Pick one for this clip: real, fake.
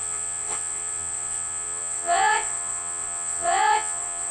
fake